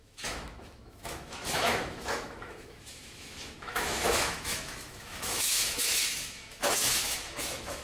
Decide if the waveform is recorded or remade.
remade